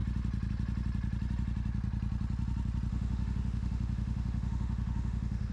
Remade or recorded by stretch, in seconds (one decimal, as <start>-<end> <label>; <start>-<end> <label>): 0.0-2.9 recorded; 2.9-5.5 remade